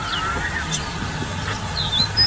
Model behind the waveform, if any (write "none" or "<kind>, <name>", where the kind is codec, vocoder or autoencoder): none